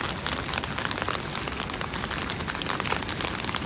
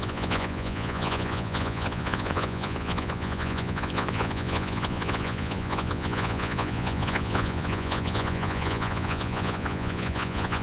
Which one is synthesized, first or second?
second